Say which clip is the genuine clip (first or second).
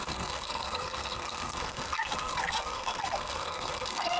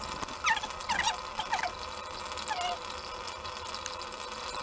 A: second